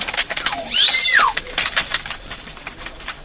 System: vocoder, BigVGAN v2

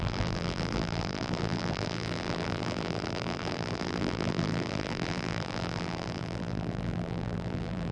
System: vocoder, BigVGAN v2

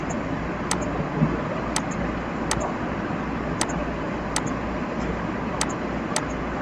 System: none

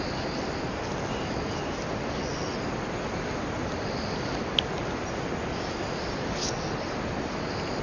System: none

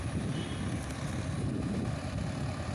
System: vocoder, BigVGAN v2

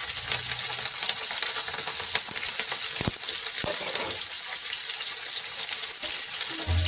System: vocoder, BigVGAN v2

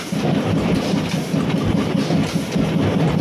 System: none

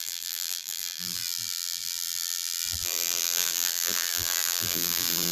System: vocoder, BigVGAN v2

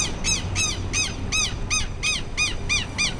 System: none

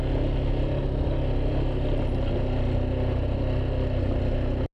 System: none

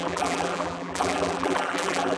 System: vocoder, BigVGAN v2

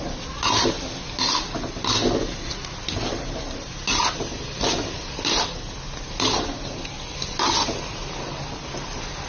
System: none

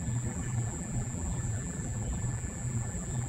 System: vocoder, BigVGAN v2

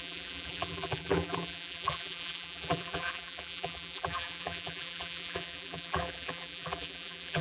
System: vocoder, BigVGAN v2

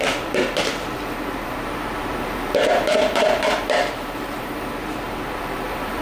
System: vocoder, BigVGAN v2